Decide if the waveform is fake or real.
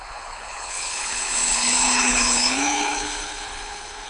fake